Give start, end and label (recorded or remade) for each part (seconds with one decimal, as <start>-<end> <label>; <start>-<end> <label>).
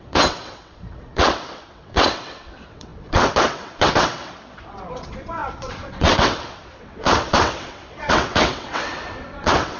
0.0-9.8 remade